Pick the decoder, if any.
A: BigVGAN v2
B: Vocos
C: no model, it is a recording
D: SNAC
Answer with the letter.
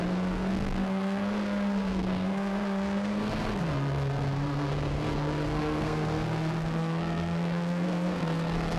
D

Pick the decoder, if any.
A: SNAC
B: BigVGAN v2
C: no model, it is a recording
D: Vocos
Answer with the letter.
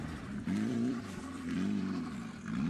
B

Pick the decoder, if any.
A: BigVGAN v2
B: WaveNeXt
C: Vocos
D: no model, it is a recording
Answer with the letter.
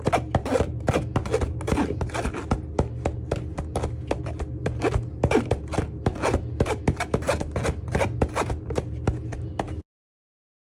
D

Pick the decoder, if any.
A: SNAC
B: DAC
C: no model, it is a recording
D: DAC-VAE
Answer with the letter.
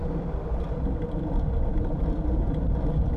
C